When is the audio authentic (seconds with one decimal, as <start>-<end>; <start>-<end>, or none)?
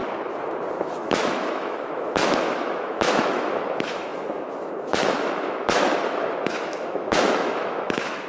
0.0-0.7